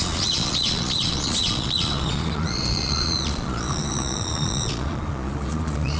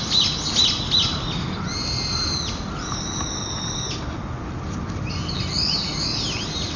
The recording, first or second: second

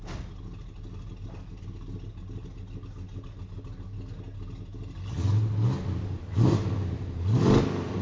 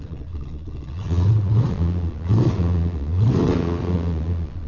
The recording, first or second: first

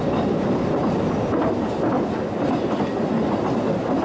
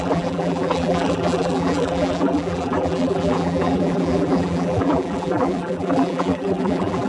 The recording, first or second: first